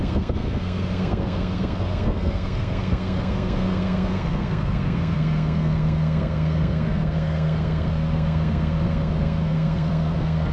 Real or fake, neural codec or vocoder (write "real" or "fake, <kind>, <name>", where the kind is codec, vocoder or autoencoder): fake, codec, SNAC